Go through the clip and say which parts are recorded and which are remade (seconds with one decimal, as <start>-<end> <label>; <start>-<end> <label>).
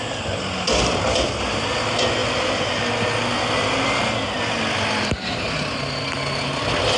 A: 0.0-7.0 recorded